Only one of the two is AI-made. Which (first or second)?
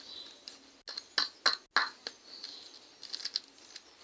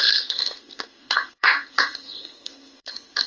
second